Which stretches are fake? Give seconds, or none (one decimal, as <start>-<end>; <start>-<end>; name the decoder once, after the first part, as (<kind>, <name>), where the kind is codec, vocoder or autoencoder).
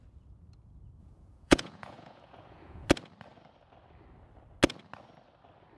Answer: 1.0-2.9 (vocoder, Vocos)